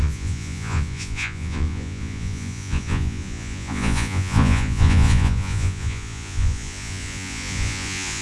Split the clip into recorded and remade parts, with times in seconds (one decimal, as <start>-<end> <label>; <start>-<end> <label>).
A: 0.0-8.2 remade